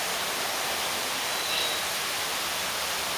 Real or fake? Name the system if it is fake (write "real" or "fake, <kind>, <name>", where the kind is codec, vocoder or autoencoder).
real